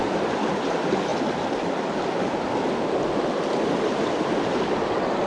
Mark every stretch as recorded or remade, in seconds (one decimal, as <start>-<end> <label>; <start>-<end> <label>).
0.0-5.3 recorded